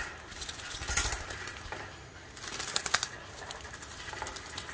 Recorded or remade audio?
recorded